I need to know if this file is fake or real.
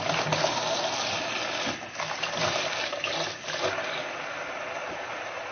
real